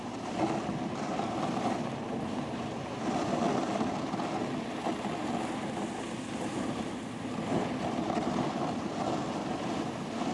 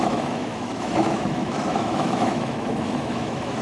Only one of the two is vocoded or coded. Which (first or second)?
second